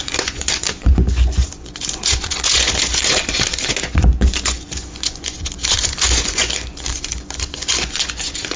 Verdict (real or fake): fake